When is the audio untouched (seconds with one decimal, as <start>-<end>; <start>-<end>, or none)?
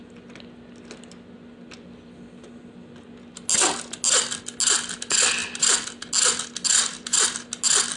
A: 0.0-8.0